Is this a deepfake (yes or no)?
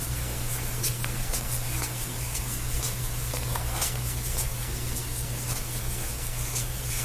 yes